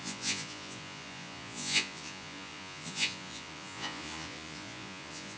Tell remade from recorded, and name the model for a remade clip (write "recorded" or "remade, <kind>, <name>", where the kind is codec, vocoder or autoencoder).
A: remade, vocoder, Vocos